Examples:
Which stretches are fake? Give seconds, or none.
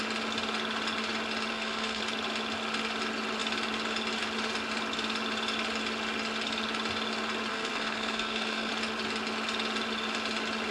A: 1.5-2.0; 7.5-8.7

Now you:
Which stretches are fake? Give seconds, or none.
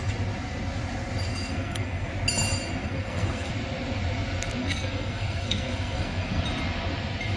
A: 1.3-2.1; 2.8-3.5; 4.6-6.4